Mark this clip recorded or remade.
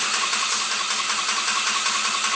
recorded